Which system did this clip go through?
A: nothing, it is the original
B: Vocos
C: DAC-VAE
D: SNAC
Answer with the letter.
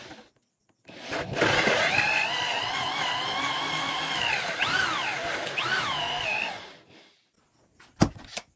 A